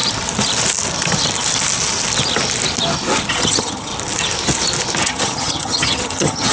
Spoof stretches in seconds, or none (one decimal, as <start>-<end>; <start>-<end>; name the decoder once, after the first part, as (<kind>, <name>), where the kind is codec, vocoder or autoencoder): 3.3-3.9 (vocoder, HiFi-GAN); 5.0-6.5